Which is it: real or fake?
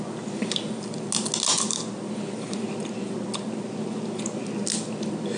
real